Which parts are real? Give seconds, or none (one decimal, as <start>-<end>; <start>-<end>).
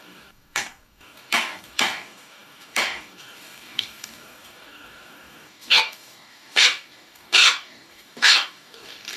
none